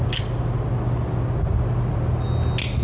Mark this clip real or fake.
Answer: real